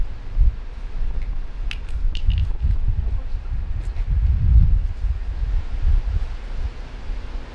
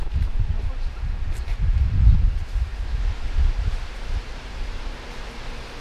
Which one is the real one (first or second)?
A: first